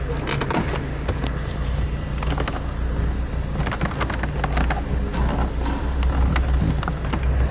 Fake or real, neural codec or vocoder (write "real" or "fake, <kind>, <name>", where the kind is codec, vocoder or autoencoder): real